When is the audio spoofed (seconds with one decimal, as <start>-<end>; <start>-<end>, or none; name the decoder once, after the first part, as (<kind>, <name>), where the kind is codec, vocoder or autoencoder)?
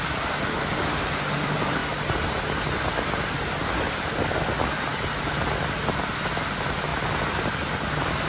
none